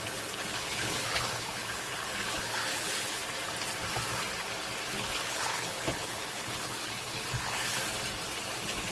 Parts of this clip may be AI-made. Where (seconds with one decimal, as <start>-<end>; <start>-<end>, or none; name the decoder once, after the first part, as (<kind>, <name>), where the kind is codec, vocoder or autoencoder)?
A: 0.0-3.2 (codec, HILCodec); 4.9-7.8; 8.5-8.9